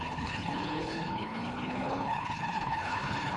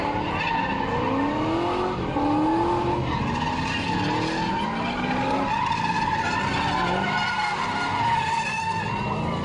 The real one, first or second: second